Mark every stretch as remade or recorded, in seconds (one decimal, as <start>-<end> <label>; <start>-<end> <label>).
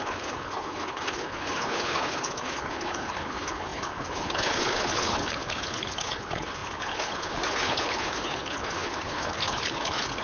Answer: 0.0-10.2 remade